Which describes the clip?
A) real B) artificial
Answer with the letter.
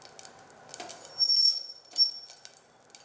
A